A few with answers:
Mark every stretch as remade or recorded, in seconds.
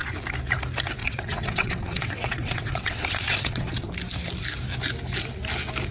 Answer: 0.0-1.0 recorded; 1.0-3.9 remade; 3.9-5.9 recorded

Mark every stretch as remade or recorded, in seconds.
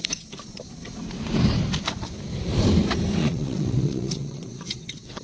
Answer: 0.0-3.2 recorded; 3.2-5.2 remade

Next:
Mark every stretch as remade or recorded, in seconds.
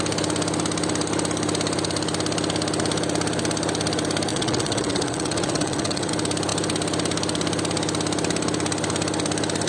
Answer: 0.0-4.3 recorded; 4.3-6.1 remade; 6.1-9.7 recorded